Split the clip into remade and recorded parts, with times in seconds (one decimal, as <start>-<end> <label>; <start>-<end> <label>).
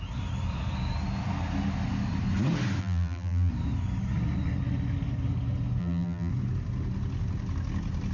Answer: 0.0-2.8 recorded; 2.8-3.5 remade; 3.5-5.8 recorded; 5.8-6.3 remade; 6.3-8.1 recorded